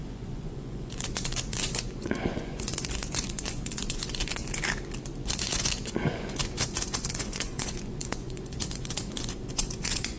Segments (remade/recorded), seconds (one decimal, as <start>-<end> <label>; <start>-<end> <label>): 0.0-4.4 remade; 4.4-5.2 recorded; 5.2-10.2 remade